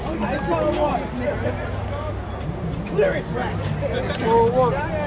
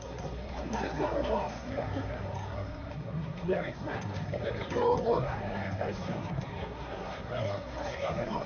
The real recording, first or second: first